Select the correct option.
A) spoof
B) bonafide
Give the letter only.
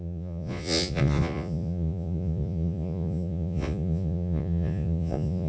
A